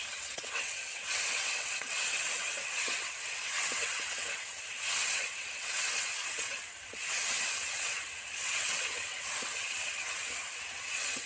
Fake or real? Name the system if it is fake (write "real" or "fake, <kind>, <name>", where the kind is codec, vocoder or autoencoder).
fake, vocoder, WaveNeXt